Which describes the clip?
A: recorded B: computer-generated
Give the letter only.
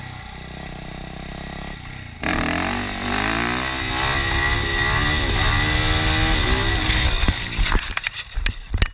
A